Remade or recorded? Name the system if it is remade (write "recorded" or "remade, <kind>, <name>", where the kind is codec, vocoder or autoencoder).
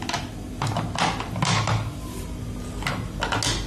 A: recorded